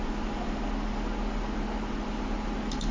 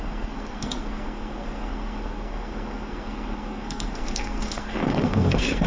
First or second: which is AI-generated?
second